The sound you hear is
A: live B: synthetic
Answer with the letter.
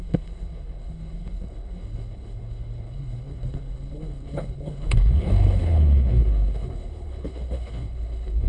B